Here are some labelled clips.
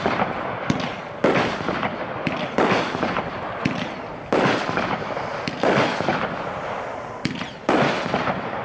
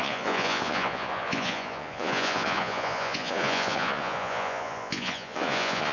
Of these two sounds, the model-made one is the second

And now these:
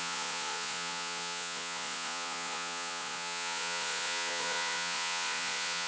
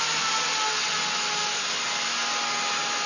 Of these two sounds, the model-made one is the first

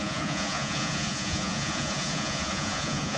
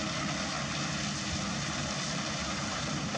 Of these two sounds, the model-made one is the first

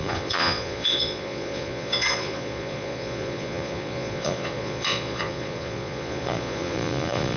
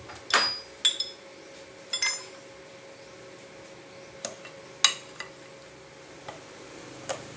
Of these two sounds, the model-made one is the first